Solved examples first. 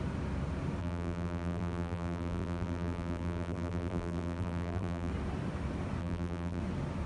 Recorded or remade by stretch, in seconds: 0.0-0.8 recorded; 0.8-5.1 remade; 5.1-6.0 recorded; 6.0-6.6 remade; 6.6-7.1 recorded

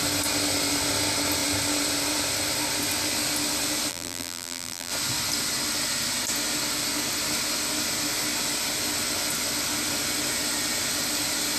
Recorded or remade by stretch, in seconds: 0.0-3.9 recorded; 3.9-4.9 remade; 4.9-11.6 recorded

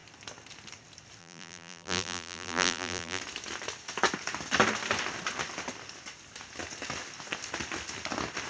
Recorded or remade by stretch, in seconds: 0.0-1.2 recorded; 1.2-3.2 remade; 3.2-8.5 recorded

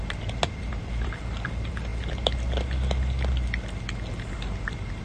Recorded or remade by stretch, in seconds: 0.0-1.9 remade; 1.9-5.0 recorded

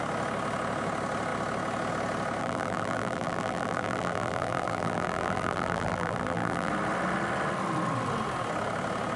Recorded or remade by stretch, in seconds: 0.0-2.4 recorded; 2.4-6.7 remade; 6.7-9.2 recorded

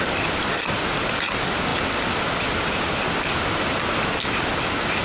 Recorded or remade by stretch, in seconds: 0.0-5.0 recorded